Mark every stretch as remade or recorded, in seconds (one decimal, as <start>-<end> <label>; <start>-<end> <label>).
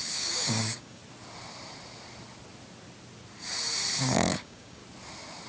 0.0-1.0 remade; 1.0-4.0 recorded; 4.0-4.8 remade; 4.8-5.5 recorded